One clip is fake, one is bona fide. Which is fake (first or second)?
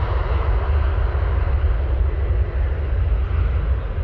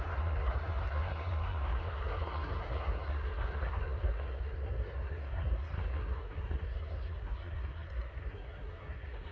second